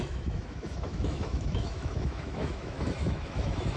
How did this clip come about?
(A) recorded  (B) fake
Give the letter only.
B